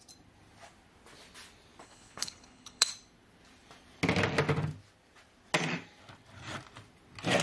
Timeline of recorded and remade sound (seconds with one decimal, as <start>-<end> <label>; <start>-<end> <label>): 0.0-1.8 recorded; 1.8-2.9 remade; 2.9-7.4 recorded